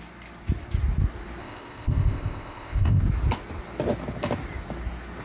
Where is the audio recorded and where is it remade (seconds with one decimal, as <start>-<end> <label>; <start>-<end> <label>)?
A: 0.0-1.4 recorded; 1.4-3.0 remade; 3.0-5.2 recorded